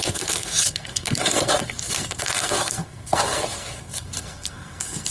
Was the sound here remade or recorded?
remade